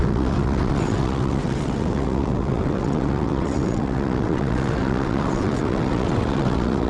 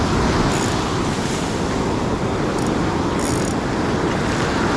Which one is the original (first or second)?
second